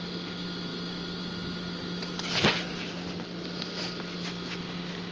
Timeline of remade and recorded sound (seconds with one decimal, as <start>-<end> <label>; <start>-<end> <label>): 0.0-5.1 recorded